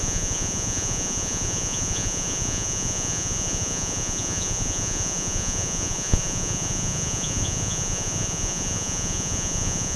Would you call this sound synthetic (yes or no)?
yes